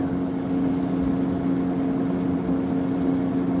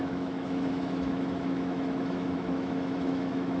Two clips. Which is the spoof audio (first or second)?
second